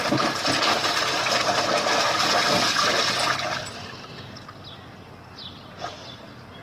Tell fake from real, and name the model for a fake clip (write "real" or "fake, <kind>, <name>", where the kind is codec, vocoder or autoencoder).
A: real